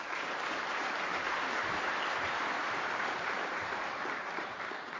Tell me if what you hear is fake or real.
fake